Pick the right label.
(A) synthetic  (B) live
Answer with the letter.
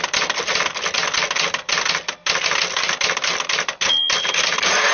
B